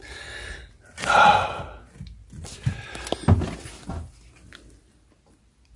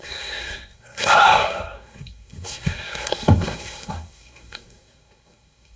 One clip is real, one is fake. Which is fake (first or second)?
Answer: second